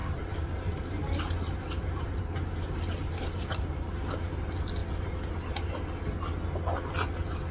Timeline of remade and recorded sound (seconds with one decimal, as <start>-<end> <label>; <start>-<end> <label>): 0.0-4.1 remade; 4.1-7.5 recorded